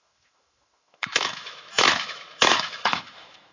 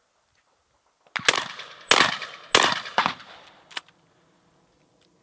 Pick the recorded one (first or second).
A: second